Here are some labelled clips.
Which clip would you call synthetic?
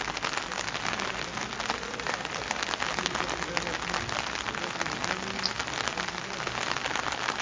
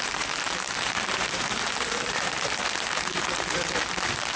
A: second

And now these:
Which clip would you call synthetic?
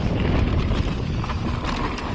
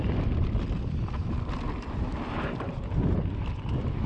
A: second